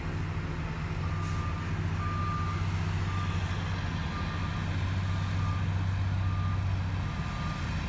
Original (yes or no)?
yes